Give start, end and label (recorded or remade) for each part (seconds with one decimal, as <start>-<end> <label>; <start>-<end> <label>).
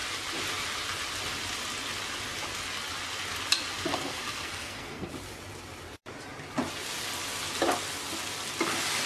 0.0-3.9 recorded; 3.9-5.1 remade; 5.1-9.1 recorded